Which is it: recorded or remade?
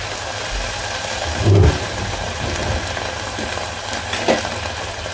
recorded